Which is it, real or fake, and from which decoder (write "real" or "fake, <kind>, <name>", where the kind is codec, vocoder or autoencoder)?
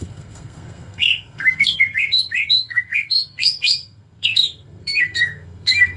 fake, codec, SNAC